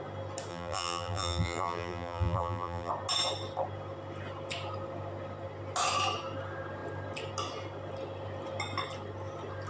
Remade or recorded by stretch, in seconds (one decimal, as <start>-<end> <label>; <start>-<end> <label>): 0.0-0.5 recorded; 0.5-2.9 remade; 2.9-9.7 recorded